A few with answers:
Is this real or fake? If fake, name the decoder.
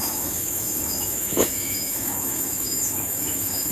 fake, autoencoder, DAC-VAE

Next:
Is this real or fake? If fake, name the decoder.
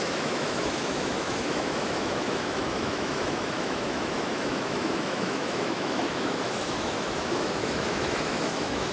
fake, autoencoder, DAC-VAE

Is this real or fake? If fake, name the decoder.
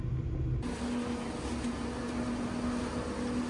real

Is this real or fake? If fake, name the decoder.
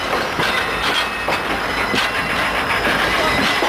real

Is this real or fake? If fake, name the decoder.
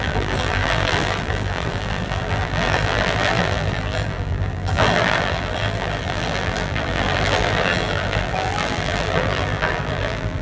fake, vocoder, BigVGAN v2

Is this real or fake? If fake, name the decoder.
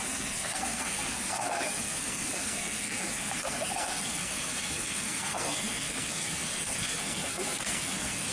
fake, codec, SNAC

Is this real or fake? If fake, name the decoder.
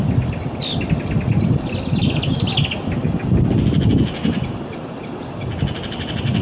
real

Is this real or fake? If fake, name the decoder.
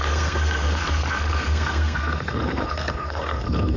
fake, codec, SNAC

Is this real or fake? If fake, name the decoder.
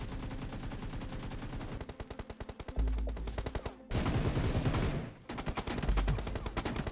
real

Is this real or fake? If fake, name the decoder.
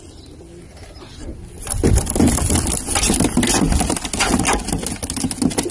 real